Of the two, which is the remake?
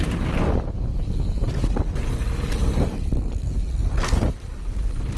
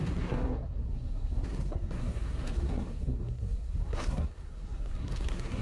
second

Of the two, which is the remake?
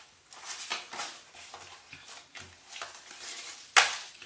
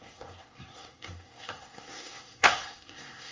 second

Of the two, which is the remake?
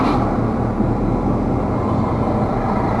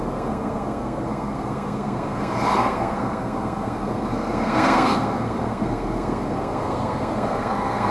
second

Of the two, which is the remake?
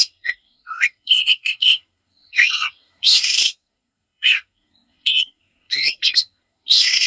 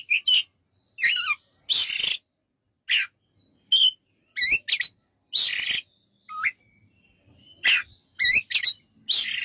first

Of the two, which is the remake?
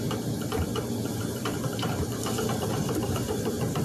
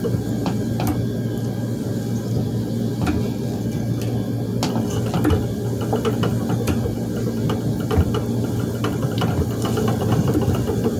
first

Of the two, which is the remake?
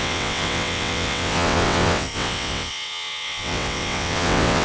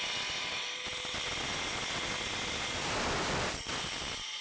first